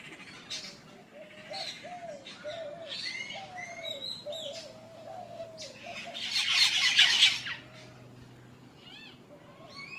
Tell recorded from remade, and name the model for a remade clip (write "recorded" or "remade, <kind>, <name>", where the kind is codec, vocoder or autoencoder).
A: recorded